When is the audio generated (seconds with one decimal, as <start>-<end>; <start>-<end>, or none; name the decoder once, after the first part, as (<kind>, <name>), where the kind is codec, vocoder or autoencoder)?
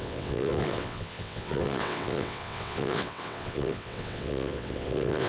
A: 0.0-5.3 (vocoder, WaveNeXt)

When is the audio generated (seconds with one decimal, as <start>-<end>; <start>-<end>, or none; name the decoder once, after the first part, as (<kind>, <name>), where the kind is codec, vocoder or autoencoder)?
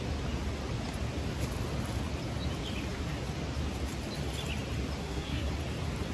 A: 5.0-5.5 (codec, SNAC)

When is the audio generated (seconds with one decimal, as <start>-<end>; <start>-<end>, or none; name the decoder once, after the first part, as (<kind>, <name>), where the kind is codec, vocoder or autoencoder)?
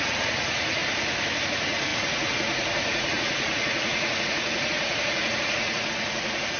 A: 0.0-0.8 (vocoder, Vocos); 1.4-6.6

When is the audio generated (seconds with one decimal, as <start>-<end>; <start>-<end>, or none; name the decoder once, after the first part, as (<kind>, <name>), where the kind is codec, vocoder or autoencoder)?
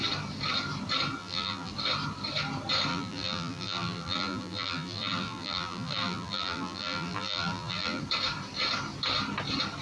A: 1.2-1.7 (vocoder, BigVGAN v2); 2.9-8.0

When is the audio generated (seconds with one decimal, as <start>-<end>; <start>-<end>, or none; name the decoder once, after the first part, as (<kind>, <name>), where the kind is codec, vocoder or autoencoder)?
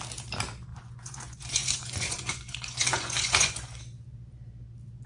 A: 0.7-3.8 (vocoder, Vocos)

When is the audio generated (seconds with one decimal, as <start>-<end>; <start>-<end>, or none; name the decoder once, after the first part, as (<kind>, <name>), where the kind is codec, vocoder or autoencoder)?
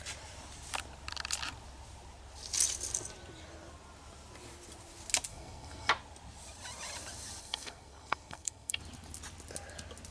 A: 5.3-5.9 (codec, SNAC); 7.4-8.8